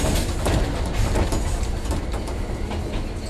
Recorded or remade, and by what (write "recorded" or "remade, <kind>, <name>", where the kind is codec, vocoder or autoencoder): recorded